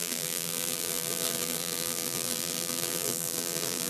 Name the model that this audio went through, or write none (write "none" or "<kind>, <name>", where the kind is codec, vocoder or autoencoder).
vocoder, BigVGAN v2